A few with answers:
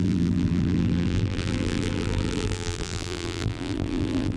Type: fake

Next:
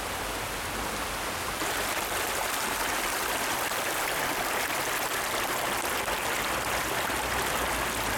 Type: real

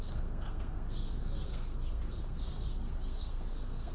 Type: fake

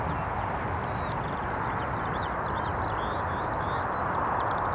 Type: real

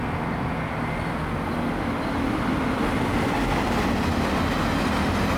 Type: real